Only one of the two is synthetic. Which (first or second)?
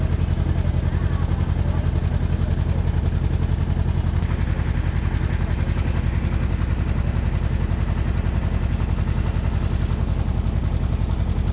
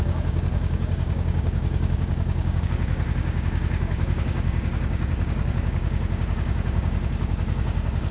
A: second